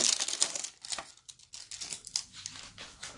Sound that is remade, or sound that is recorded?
recorded